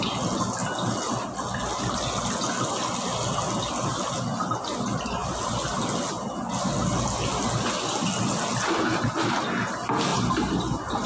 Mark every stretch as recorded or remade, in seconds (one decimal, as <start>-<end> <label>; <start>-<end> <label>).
0.0-11.1 recorded